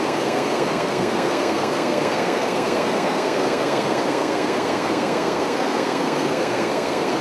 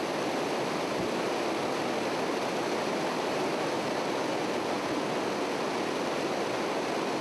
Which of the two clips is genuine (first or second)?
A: second